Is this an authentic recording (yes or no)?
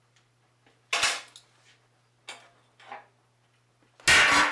yes